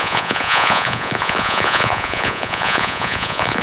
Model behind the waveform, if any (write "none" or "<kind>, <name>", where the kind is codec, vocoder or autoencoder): vocoder, Vocos